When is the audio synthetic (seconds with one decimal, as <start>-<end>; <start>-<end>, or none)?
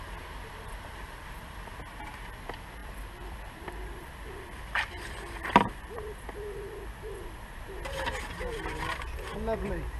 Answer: 2.8-6.8